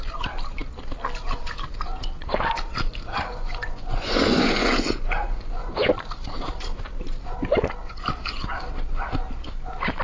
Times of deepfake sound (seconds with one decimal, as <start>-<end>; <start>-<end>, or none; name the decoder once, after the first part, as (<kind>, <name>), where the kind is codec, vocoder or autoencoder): 3.1-5.7 (vocoder, Vocos)